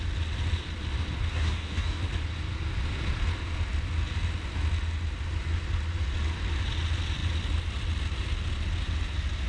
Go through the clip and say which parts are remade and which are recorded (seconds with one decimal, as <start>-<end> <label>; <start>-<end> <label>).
0.0-1.3 recorded; 1.3-2.0 remade; 2.0-9.5 recorded